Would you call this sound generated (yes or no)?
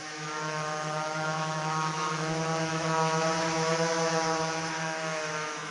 yes